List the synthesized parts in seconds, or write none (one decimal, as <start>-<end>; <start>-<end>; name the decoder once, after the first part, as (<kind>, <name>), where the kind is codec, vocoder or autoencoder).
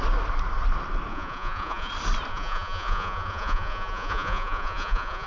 1.1-1.9 (vocoder, Vocos); 2.3-5.3